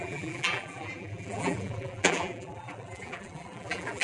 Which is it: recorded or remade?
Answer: remade